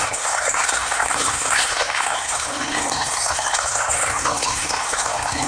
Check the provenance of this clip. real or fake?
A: fake